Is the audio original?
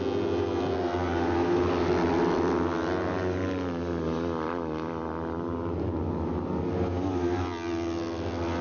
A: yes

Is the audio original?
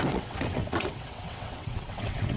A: no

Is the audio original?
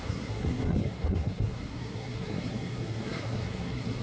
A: no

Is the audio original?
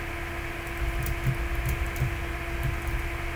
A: yes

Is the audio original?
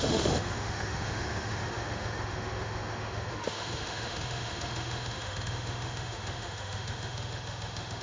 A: no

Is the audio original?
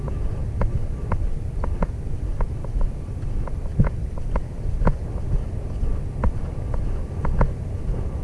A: yes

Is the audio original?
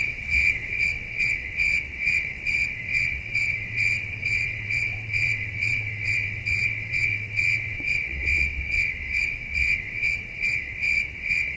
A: no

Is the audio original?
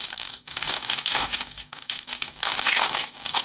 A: no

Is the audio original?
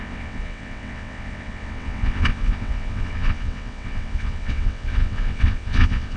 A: no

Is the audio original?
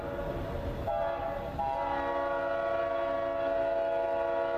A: yes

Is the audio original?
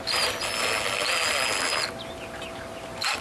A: yes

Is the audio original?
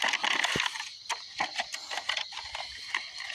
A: yes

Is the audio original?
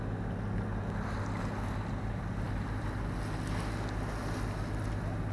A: yes